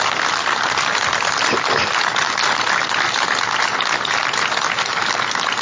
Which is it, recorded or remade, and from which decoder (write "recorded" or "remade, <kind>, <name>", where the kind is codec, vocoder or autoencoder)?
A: recorded